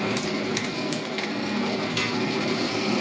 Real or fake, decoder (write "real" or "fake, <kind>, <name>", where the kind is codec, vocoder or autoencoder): fake, codec, SNAC